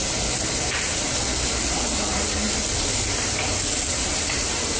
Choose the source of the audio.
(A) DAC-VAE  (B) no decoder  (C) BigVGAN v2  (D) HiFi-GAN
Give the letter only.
B